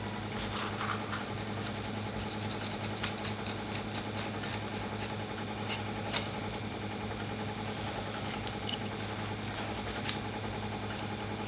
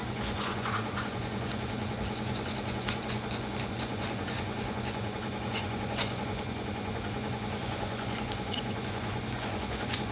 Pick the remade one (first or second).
second